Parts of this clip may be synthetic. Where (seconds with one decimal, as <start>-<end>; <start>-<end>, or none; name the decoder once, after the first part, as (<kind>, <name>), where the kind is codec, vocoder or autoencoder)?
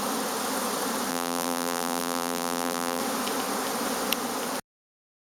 1.1-3.0 (vocoder, BigVGAN v2)